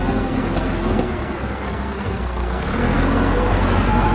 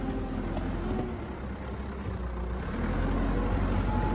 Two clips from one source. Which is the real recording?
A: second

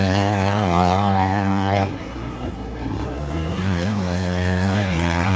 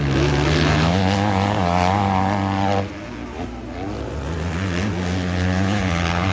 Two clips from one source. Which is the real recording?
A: second